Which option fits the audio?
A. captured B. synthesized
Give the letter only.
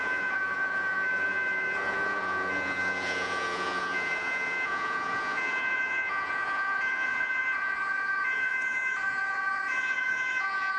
B